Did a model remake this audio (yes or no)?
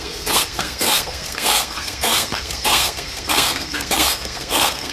yes